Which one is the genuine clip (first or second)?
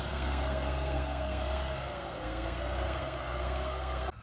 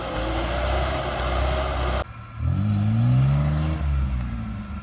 second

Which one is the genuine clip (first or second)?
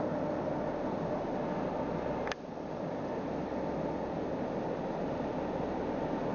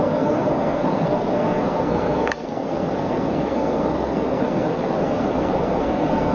first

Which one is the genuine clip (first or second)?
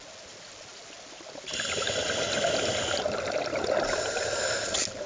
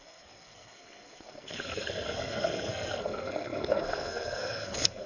first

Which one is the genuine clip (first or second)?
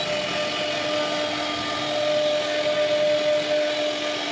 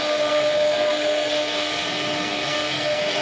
first